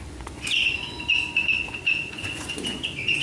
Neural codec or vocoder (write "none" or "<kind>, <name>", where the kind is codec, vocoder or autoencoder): vocoder, Vocos